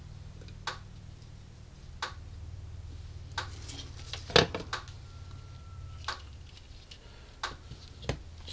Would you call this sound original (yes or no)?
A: yes